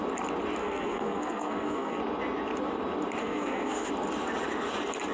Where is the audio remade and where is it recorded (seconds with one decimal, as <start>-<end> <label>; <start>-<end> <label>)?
0.0-0.6 recorded; 0.6-2.0 remade; 2.0-3.2 recorded; 3.2-3.9 remade; 3.9-5.1 recorded